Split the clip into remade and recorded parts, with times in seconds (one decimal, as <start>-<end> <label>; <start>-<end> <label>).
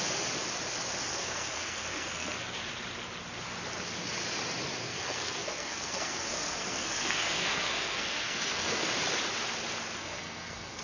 0.0-1.1 recorded; 1.1-2.6 remade; 2.6-4.8 recorded; 4.8-8.9 remade; 8.9-10.0 recorded; 10.0-10.8 remade